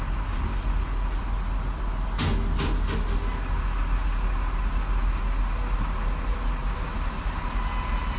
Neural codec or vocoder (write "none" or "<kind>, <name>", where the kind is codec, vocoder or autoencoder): none